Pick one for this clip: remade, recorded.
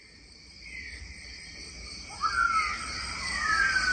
recorded